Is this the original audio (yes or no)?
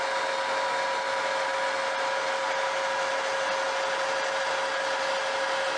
yes